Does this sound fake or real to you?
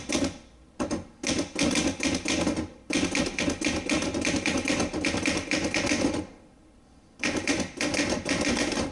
real